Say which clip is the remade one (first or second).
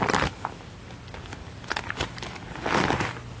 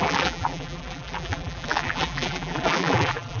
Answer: second